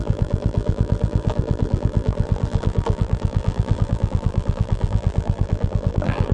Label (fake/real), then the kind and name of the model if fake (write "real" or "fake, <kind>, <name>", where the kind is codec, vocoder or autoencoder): fake, vocoder, BigVGAN v2